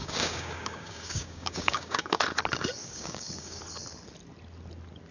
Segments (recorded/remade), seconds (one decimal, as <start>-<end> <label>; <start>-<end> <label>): 0.0-2.2 remade; 2.2-2.8 recorded; 2.8-3.6 remade; 3.6-5.1 recorded